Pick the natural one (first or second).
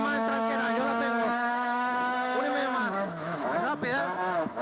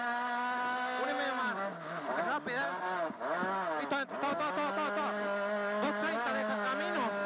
second